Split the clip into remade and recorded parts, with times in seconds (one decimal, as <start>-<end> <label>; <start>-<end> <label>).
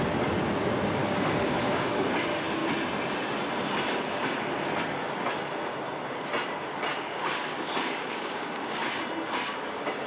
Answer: 0.0-1.0 recorded; 1.0-2.1 remade; 2.1-6.9 recorded; 6.9-9.0 remade; 9.0-10.1 recorded